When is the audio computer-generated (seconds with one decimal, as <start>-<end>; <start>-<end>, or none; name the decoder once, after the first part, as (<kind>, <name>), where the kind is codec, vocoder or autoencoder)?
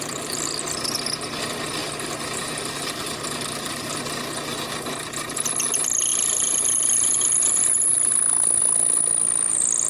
1.8-4.0 (vocoder, BigVGAN v2)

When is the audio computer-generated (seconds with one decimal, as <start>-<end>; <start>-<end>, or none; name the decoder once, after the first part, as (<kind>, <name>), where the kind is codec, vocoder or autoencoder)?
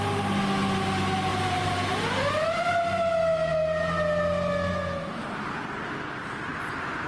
1.3-1.9 (vocoder, BigVGAN v2)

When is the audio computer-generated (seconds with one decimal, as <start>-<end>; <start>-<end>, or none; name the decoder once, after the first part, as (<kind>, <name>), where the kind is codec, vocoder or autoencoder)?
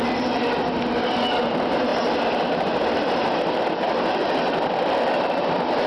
none